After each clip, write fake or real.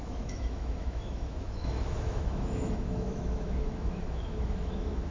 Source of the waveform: fake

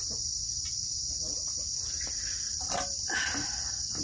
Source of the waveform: real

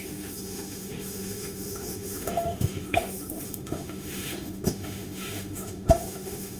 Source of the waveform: fake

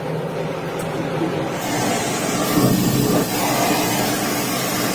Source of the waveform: real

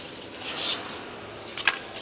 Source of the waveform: real